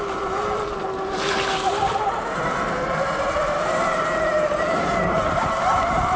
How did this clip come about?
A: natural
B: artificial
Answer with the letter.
B